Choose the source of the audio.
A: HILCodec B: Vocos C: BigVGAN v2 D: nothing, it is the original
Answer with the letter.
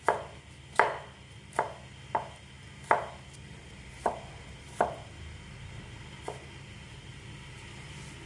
D